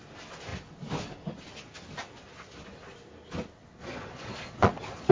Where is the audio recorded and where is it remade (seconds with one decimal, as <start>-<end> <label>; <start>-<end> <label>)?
0.0-3.8 recorded; 3.8-5.1 remade